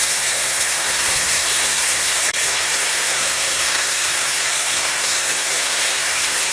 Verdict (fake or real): fake